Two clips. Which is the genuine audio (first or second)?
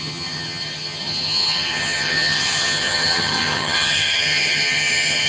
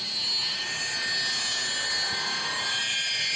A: second